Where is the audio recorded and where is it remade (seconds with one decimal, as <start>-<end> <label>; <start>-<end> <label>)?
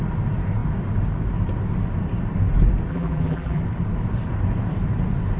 0.0-2.9 recorded; 2.9-3.6 remade; 3.6-5.4 recorded